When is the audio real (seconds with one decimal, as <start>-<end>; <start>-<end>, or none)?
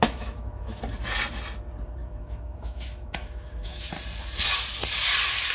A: 0.8-2.0; 3.9-5.5